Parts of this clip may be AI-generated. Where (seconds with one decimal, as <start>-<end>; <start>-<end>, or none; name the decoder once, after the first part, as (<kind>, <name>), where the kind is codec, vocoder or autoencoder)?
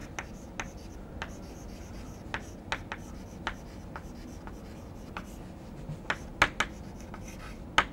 none